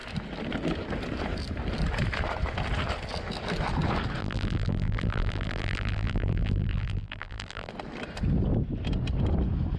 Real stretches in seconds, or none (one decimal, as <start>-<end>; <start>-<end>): 0.0-4.2; 7.7-9.8